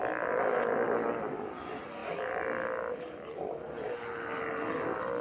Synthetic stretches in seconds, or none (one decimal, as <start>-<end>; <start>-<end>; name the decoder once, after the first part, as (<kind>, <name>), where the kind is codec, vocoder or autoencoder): none